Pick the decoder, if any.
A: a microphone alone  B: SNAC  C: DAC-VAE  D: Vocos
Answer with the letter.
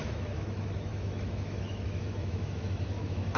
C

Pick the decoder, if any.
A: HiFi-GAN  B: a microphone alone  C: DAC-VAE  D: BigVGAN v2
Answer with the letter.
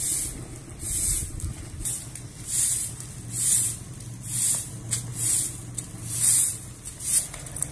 B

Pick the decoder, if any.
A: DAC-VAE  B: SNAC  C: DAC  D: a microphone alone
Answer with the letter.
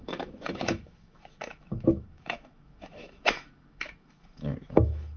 A